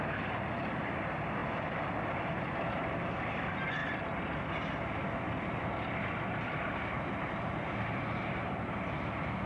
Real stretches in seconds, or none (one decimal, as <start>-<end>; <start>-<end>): 0.0-9.5